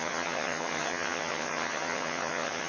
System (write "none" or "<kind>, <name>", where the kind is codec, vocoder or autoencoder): vocoder, HiFi-GAN